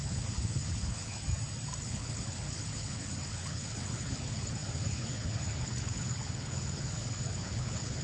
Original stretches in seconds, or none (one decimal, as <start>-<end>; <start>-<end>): 1.2-1.8